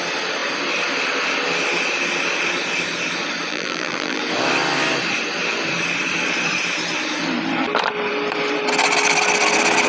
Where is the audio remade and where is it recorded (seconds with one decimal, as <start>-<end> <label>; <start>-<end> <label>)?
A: 0.0-3.5 recorded; 3.5-4.2 remade; 4.2-9.9 recorded